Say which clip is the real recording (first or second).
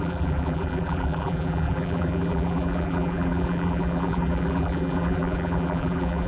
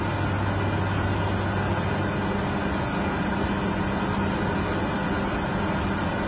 second